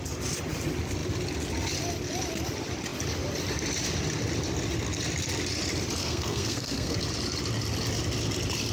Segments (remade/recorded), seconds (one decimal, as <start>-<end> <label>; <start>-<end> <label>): 0.0-6.0 recorded; 6.0-7.0 remade; 7.0-8.7 recorded